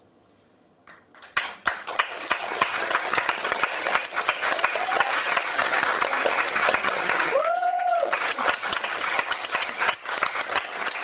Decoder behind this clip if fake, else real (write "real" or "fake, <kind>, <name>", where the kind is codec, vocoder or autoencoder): fake, vocoder, HiFi-GAN